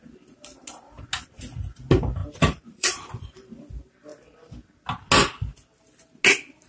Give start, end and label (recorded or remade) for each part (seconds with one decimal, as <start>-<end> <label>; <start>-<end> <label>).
0.0-2.2 recorded; 2.2-3.5 remade; 3.5-6.7 recorded

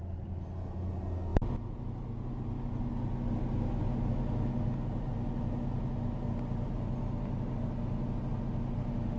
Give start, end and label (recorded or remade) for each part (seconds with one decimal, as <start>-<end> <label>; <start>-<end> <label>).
0.0-9.2 recorded

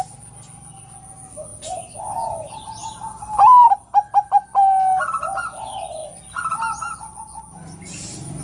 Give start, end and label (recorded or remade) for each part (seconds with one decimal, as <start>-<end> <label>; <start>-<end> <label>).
0.0-8.4 recorded

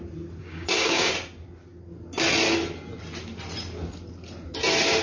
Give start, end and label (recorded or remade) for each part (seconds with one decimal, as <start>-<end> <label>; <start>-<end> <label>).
0.0-0.4 recorded; 0.4-1.1 remade; 1.1-5.0 recorded

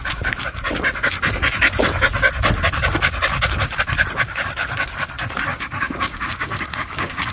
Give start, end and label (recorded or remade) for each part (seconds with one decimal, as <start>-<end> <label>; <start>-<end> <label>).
0.0-5.5 recorded; 5.5-7.3 remade

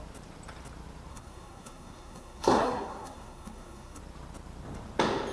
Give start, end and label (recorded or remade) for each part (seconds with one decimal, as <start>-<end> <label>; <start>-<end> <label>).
0.0-1.1 recorded; 1.1-4.0 remade; 4.0-5.3 recorded

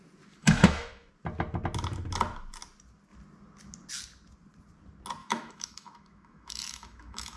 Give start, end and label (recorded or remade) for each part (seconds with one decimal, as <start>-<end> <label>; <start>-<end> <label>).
0.0-0.4 recorded; 0.4-1.1 remade; 1.1-5.2 recorded; 5.2-7.4 remade